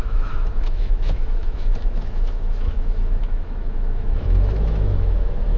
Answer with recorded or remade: remade